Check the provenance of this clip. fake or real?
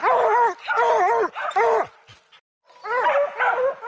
real